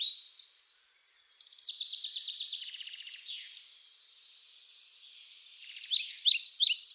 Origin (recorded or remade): remade